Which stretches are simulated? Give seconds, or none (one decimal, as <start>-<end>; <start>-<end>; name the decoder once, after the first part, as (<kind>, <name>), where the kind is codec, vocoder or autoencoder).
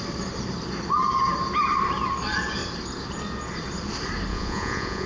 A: 4.3-5.1 (vocoder, Vocos)